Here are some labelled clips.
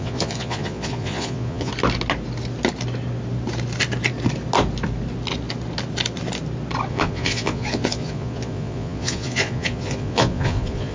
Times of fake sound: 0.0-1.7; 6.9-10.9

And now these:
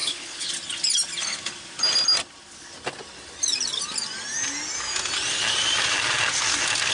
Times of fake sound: 0.0-0.5

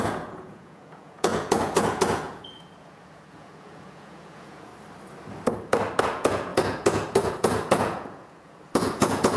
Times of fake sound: 0.0-4.7; 6.0-9.4

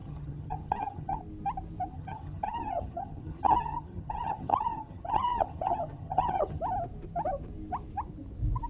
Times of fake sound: 0.0-1.2; 1.9-6.6

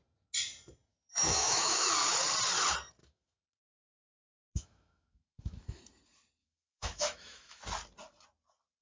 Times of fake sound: 0.9-1.9; 3.0-5.8; 6.4-7.6

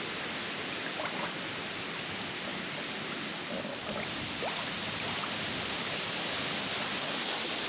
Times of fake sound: none